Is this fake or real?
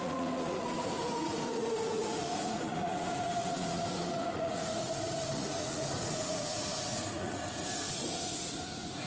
fake